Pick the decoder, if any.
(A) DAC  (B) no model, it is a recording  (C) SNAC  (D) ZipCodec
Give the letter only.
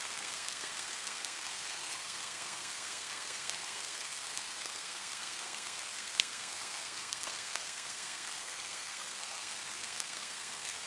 C